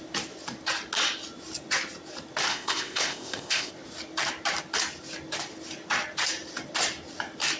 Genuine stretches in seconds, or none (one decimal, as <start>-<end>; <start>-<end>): 0.0-2.5; 3.7-7.6